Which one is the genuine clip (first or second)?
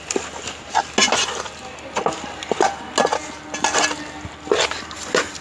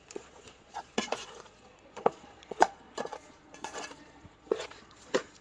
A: first